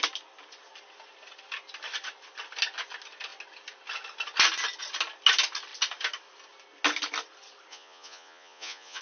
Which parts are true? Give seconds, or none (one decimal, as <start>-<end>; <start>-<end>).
0.0-7.7